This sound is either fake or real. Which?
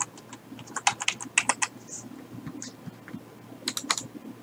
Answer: real